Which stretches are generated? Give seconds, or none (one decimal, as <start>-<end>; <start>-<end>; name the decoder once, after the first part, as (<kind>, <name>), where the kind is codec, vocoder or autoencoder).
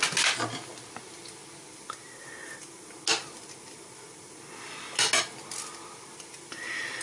none